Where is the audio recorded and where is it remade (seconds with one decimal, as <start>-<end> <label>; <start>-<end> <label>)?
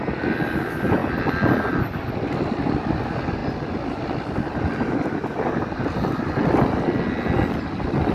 0.0-8.1 recorded